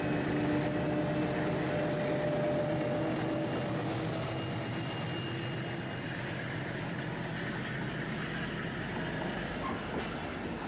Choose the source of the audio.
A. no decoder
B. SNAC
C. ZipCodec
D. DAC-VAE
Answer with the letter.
A